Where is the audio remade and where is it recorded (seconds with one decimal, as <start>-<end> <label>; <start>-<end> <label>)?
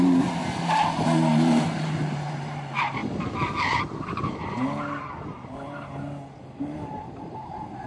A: 0.0-0.4 remade; 0.4-1.0 recorded; 1.0-3.0 remade; 3.0-6.6 recorded; 6.6-7.9 remade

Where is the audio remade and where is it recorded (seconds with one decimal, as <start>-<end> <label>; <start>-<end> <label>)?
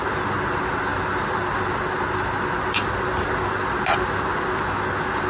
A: 0.0-5.3 recorded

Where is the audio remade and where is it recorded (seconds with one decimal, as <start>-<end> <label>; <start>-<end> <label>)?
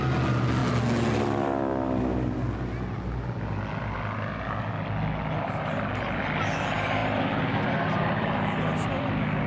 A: 0.0-9.5 recorded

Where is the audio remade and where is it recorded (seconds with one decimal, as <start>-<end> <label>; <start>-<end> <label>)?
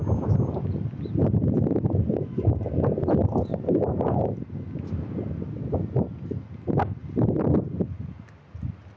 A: 0.0-7.0 recorded; 7.0-7.7 remade; 7.7-9.0 recorded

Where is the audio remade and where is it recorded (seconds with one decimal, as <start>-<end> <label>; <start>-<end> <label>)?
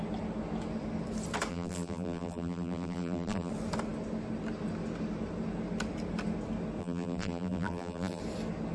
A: 0.0-1.5 recorded; 1.5-3.5 remade; 3.5-6.8 recorded; 6.8-8.2 remade; 8.2-8.7 recorded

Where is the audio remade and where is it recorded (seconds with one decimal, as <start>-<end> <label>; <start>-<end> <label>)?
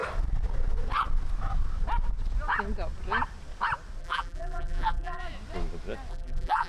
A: 0.0-4.0 recorded; 4.0-5.2 remade; 5.2-6.1 recorded; 6.1-6.7 remade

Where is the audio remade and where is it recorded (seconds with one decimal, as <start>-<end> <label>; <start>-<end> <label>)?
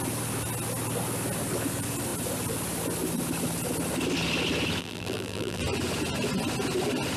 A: 0.0-4.8 recorded; 4.8-5.6 remade; 5.6-7.2 recorded